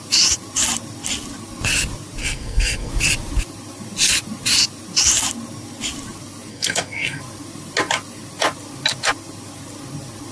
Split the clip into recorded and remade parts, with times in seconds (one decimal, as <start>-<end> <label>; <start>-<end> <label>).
0.0-2.2 recorded; 2.2-2.9 remade; 2.9-6.5 recorded; 6.5-7.2 remade; 7.2-10.3 recorded

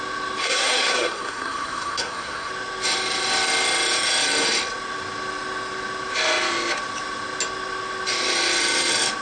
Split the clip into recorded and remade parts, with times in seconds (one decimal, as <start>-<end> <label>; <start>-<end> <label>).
0.0-0.4 recorded; 0.4-2.5 remade; 2.5-9.2 recorded

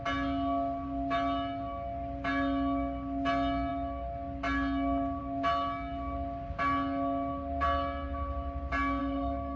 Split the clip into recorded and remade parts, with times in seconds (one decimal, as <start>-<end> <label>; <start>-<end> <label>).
0.0-9.0 recorded; 9.0-9.6 remade

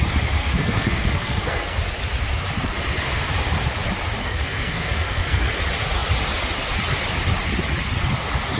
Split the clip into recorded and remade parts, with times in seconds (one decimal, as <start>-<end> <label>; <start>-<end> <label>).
0.0-0.4 recorded; 0.4-1.9 remade; 1.9-4.2 recorded; 4.2-5.5 remade; 5.5-8.6 recorded

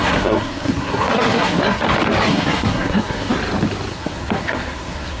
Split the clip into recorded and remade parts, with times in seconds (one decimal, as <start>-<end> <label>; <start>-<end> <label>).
0.0-1.8 remade; 1.8-2.3 recorded; 2.3-3.3 remade; 3.3-3.9 recorded; 3.9-5.2 remade